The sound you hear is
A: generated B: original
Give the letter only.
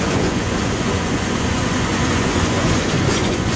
A